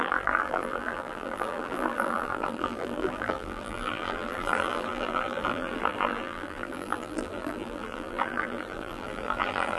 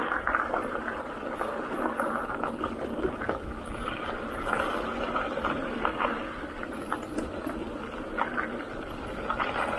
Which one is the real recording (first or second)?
second